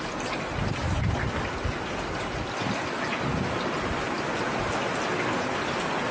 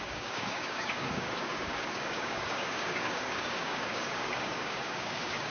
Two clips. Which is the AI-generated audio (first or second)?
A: second